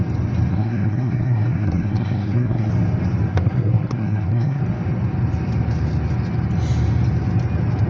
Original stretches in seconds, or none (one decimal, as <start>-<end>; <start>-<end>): 0.0-0.5; 2.7-3.3; 4.6-7.9